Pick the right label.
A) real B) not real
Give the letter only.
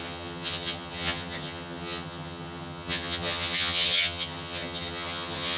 B